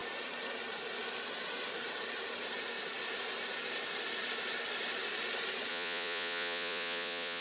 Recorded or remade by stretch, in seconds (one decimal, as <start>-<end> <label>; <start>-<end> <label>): 0.0-5.7 recorded; 5.7-7.4 remade